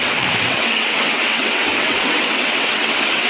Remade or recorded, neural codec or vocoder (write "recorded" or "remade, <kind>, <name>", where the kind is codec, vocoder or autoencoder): remade, vocoder, WaveNeXt